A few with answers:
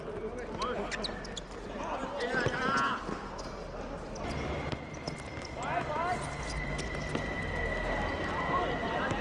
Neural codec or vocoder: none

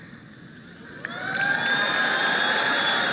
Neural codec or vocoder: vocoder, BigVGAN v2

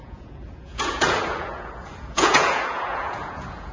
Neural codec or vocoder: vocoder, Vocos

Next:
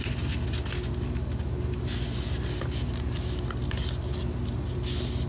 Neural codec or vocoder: none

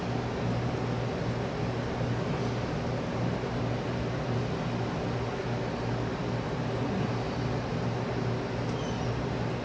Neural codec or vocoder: none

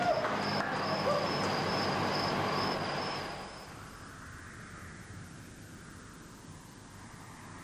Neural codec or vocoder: none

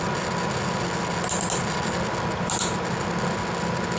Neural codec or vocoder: none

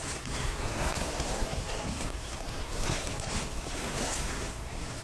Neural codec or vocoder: codec, SNAC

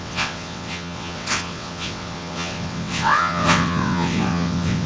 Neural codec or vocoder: vocoder, WaveNeXt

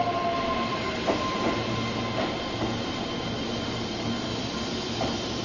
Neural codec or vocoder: none